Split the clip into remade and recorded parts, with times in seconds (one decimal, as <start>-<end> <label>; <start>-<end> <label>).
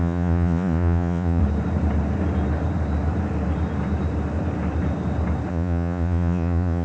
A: 0.0-1.4 remade; 1.4-5.5 recorded; 5.5-6.8 remade